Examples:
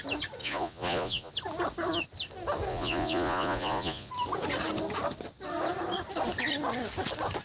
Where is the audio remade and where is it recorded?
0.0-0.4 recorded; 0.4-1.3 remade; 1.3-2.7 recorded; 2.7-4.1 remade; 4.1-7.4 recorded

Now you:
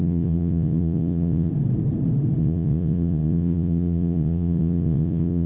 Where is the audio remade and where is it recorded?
0.0-1.5 remade; 1.5-2.4 recorded; 2.4-5.5 remade

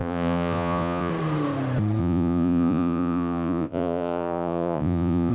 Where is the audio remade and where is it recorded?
0.0-1.1 remade; 1.1-2.0 recorded; 2.0-5.3 remade